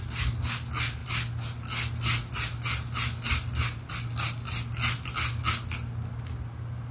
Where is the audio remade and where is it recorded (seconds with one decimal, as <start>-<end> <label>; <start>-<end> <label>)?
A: 0.0-6.9 recorded